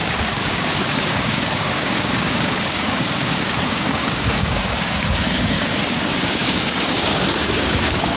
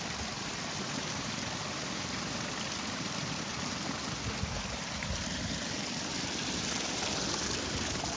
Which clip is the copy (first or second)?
first